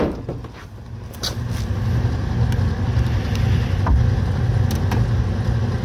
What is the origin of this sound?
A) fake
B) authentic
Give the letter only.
B